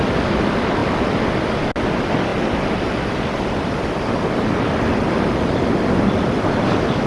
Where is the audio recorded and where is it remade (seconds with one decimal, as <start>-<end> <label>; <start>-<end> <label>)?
0.0-7.1 recorded